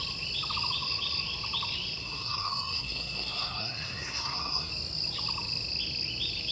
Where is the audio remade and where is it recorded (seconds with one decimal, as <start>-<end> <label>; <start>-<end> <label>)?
0.0-2.0 recorded; 2.0-4.7 remade; 4.7-6.5 recorded